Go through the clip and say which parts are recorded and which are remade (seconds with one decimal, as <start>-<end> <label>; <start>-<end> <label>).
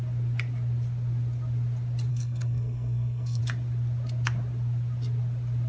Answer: 0.0-2.1 recorded; 2.1-3.4 remade; 3.4-5.7 recorded